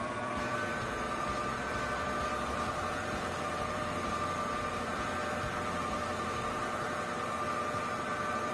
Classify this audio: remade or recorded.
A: remade